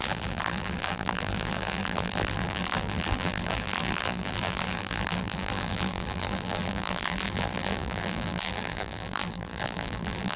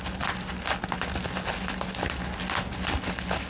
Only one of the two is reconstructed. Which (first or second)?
first